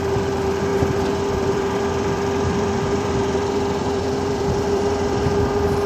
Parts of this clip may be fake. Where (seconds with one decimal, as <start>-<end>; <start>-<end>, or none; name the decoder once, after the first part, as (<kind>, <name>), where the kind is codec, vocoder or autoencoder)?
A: 0.0-5.9 (vocoder, BigVGAN v2)